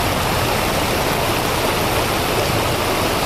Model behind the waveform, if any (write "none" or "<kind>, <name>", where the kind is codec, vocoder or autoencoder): none